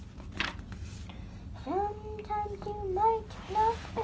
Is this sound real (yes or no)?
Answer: yes